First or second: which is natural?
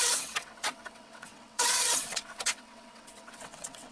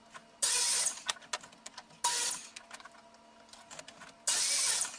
second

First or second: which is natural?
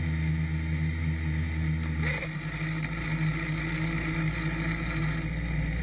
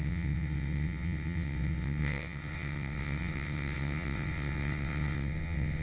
first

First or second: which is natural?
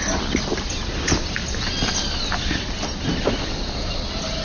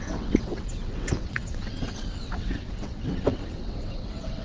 first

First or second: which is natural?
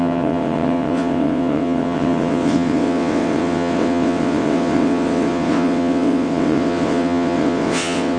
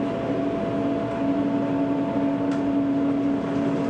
second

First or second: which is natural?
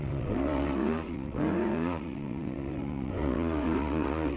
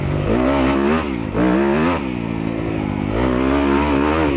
second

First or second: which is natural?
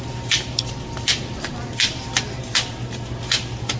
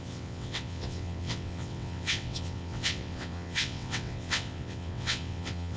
first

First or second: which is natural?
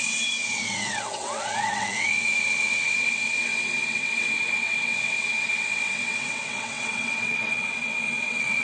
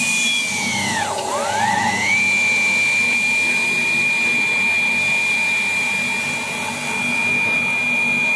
second